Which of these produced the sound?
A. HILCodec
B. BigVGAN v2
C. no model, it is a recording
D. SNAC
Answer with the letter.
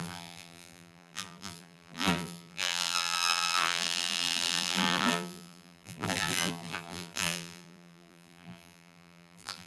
B